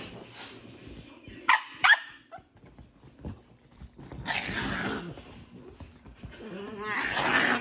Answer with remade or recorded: recorded